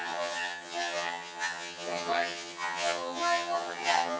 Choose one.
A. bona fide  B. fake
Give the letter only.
B